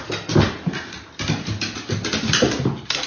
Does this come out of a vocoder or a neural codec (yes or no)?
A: no